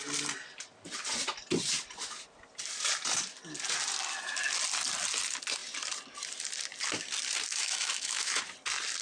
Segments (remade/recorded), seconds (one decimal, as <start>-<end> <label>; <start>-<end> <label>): 0.0-7.5 recorded; 7.5-8.4 remade; 8.4-9.0 recorded